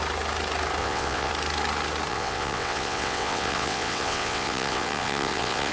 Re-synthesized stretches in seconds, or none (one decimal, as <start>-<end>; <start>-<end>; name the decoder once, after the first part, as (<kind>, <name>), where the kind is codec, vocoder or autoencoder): 0.8-1.3 (vocoder, WaveNeXt); 2.1-5.7